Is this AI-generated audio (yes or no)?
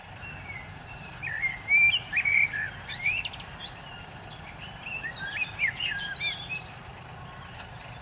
yes